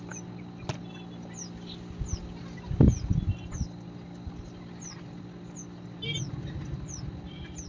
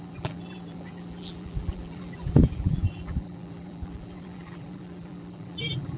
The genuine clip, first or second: first